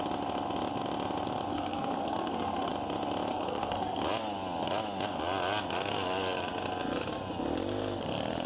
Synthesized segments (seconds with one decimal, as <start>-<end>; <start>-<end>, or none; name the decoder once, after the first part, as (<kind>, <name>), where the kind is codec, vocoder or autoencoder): 1.5-2.7 (codec, SNAC); 3.3-4.0